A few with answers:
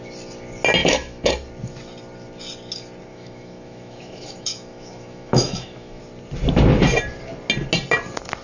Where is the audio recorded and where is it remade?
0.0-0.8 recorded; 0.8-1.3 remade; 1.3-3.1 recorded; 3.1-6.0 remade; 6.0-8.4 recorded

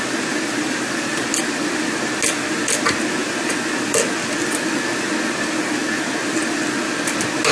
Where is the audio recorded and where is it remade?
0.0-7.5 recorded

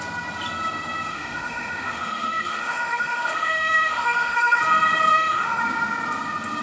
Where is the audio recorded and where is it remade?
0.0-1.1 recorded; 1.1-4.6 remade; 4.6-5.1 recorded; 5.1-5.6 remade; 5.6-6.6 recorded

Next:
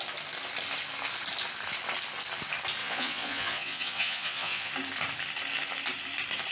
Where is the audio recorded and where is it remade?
0.0-2.8 recorded; 2.8-4.7 remade; 4.7-6.5 recorded